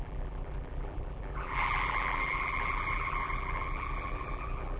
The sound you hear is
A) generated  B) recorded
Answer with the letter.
A